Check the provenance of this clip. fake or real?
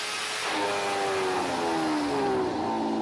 real